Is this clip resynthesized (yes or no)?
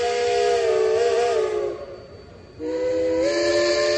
no